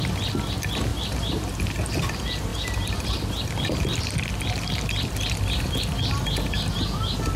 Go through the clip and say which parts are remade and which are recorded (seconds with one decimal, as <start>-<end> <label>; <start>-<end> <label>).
0.0-0.9 recorded; 0.9-1.9 remade; 1.9-7.4 recorded